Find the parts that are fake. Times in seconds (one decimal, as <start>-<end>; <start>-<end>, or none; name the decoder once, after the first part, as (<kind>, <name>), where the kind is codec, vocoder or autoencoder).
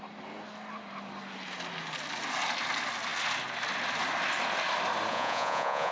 5.1-5.9 (vocoder, Vocos)